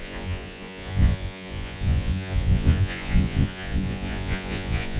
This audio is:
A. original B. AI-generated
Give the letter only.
B